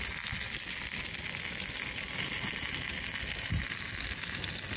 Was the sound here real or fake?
real